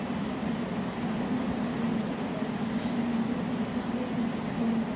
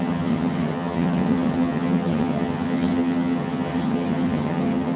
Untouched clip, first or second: first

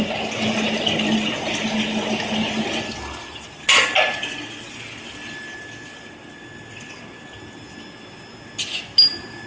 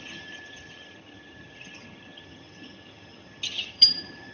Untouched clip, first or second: first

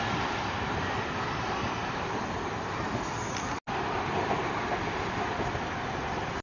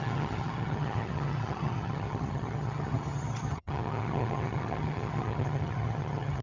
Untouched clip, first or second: first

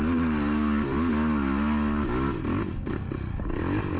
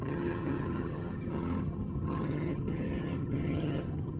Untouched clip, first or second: first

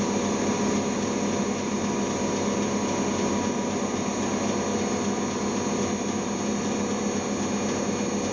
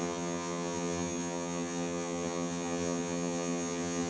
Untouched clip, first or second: first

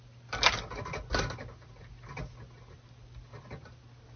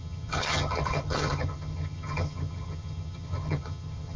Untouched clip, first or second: first